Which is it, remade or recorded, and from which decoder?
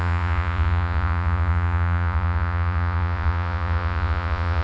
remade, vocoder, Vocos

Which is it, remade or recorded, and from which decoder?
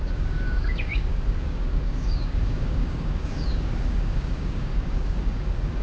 remade, codec, DAC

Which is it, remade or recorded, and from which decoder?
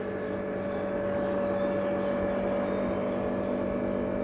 recorded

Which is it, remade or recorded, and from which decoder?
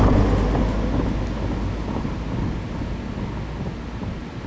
recorded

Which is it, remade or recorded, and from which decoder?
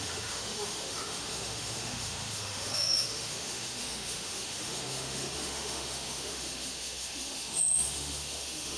remade, autoencoder, DAC-VAE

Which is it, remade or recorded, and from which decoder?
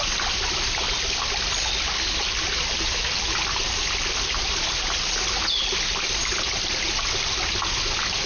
recorded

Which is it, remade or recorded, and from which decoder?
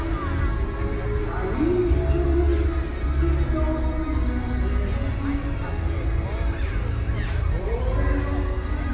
recorded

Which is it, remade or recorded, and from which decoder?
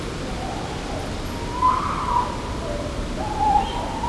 recorded